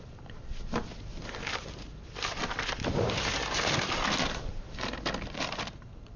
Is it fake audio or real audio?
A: fake